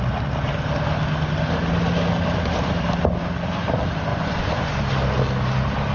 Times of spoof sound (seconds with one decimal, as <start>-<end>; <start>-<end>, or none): 4.1-4.8